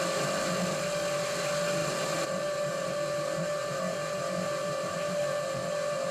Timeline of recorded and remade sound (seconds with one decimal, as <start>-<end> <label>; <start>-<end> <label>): 0.0-1.8 recorded; 1.8-3.8 remade; 3.8-6.1 recorded